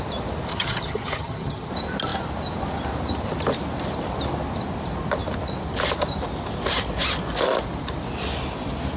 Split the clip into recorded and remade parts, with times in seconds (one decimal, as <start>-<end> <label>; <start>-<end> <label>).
0.0-0.5 recorded; 0.5-1.7 remade; 1.7-9.0 recorded